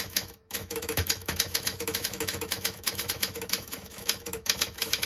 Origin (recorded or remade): remade